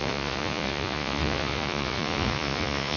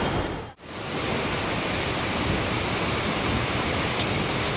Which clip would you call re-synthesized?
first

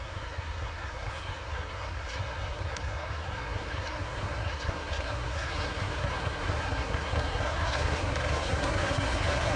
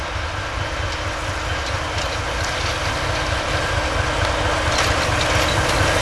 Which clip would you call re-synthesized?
first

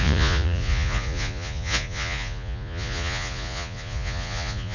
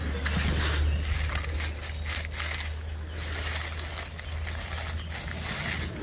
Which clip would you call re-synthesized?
first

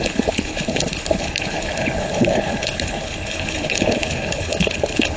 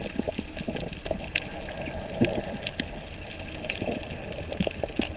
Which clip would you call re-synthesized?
first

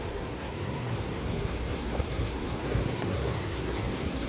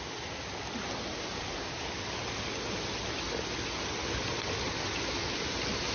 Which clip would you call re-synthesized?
first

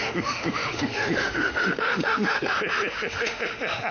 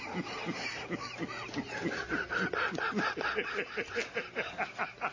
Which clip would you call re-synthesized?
first